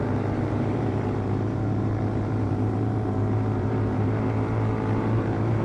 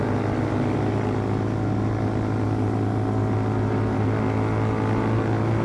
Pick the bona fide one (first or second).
second